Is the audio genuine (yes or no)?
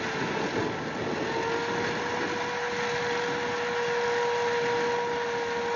yes